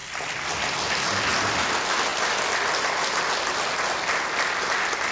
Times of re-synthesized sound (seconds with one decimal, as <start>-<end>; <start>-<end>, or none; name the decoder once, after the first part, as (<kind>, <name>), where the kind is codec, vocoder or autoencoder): 0.0-0.9 (vocoder, BigVGAN v2)